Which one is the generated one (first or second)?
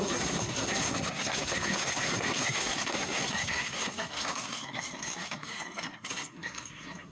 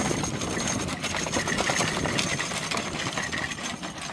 first